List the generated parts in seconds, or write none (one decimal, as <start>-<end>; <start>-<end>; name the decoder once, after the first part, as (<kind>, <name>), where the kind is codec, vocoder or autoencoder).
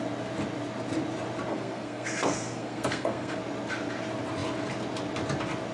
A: 1.5-3.4 (codec, SNAC)